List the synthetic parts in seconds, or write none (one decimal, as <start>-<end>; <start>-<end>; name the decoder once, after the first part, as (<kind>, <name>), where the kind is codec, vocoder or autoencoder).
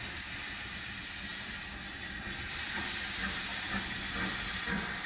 none